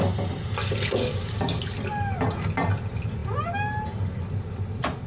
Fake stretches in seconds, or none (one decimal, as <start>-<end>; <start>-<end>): none